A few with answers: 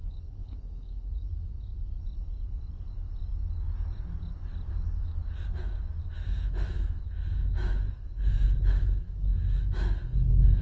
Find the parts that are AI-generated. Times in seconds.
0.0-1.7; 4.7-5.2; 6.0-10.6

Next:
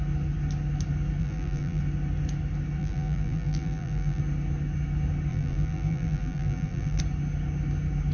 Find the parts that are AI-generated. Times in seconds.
1.2-1.8; 2.8-4.2; 5.3-7.0